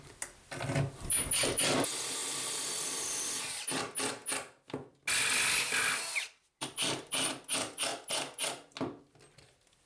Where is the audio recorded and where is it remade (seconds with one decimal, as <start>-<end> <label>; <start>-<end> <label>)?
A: 0.0-2.2 recorded; 2.2-3.4 remade; 3.4-6.6 recorded; 6.6-7.3 remade; 7.3-9.9 recorded